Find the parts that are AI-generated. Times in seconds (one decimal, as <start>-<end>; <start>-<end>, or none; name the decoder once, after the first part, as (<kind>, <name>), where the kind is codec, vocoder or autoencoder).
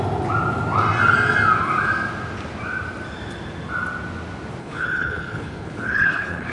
4.6-6.5 (codec, HILCodec)